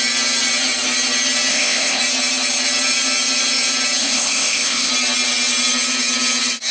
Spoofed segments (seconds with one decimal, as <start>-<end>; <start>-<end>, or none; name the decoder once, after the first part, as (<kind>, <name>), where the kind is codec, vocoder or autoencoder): 1.5-2.0 (codec, ZipCodec); 4.0-4.9